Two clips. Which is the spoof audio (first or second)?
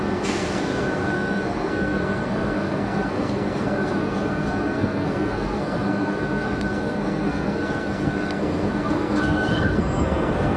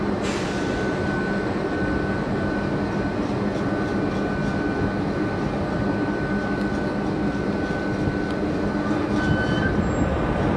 first